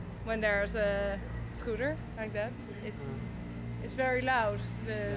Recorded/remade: recorded